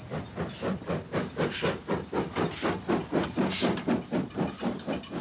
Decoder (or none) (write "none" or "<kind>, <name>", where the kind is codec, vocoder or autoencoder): none